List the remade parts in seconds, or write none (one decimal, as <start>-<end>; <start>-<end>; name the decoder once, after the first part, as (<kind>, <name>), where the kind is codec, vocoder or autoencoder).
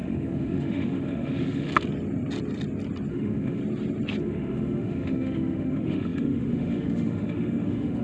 0.0-1.7 (autoencoder, DAC-VAE); 3.1-3.6; 4.2-8.0